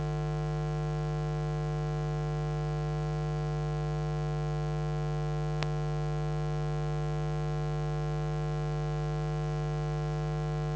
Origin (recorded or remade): recorded